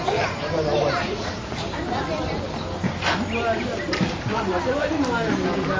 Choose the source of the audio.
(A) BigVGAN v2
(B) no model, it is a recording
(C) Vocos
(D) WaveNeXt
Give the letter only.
B